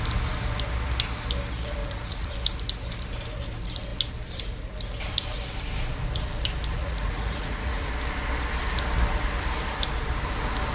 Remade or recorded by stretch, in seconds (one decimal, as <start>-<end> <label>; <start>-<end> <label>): 0.0-1.8 recorded; 1.8-2.3 remade; 2.3-6.7 recorded; 6.7-7.9 remade; 7.9-10.7 recorded